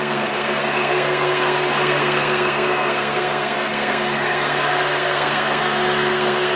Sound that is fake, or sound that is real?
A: fake